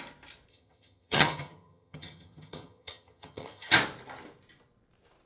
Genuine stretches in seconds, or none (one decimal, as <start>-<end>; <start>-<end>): 0.0-0.5; 3.7-5.3